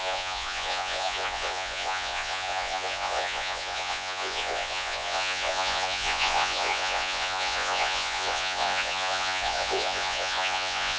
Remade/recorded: remade